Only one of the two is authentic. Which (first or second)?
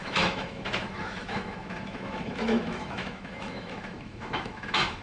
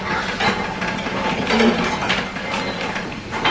second